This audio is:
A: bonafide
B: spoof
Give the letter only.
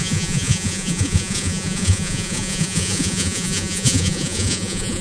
B